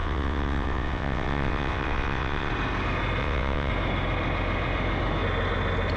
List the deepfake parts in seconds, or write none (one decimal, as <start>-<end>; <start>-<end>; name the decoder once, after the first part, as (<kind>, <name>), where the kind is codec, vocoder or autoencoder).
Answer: 0.0-2.5 (vocoder, WaveNeXt); 3.2-3.7